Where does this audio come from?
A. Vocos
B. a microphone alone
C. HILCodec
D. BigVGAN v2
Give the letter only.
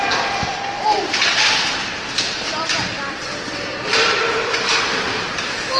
D